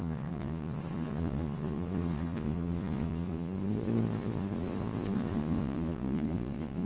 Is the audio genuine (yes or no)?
no